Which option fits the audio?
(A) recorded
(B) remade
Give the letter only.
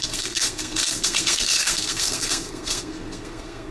B